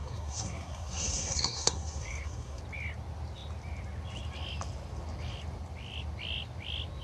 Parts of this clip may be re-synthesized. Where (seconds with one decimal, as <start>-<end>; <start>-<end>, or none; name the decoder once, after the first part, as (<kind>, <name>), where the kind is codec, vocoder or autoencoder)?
0.0-2.6 (codec, SNAC)